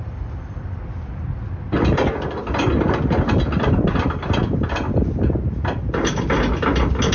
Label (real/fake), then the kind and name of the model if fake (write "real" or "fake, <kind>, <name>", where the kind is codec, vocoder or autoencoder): real